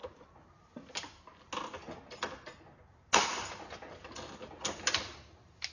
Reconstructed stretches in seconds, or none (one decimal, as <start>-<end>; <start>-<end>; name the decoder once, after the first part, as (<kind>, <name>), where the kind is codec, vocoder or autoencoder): none